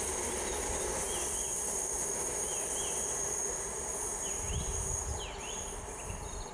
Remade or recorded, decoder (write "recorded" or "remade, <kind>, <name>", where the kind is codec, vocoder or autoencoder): recorded